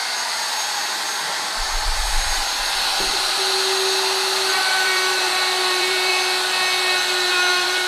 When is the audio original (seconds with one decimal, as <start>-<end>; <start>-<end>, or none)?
0.0-4.7; 6.1-7.3